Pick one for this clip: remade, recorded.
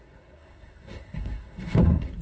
remade